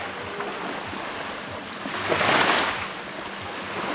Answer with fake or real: real